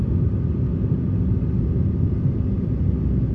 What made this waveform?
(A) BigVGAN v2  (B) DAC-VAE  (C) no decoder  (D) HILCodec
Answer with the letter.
C